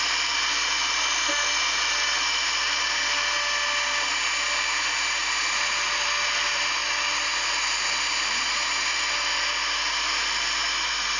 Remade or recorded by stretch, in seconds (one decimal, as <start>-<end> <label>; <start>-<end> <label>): 0.0-11.2 recorded